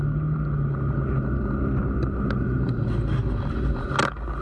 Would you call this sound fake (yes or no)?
no